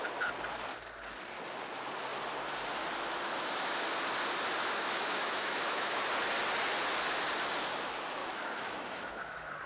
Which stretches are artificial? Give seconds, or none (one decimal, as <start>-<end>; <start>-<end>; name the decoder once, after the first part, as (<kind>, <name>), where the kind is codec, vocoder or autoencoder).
4.6-6.1 (autoencoder, DAC-VAE); 8.2-9.7